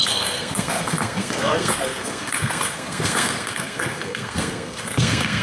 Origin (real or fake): fake